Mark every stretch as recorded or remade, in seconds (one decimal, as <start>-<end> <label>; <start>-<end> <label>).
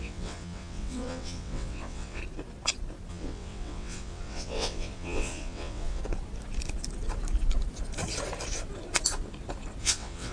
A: 0.0-2.2 remade; 2.2-3.1 recorded; 3.1-6.0 remade; 6.0-9.8 recorded; 9.8-10.3 remade